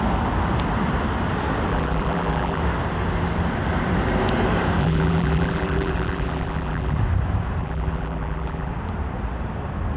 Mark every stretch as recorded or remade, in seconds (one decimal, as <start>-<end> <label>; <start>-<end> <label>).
0.0-1.7 recorded; 1.7-2.6 remade; 2.6-4.8 recorded; 4.8-7.0 remade; 7.0-7.6 recorded; 7.6-8.7 remade; 8.7-10.0 recorded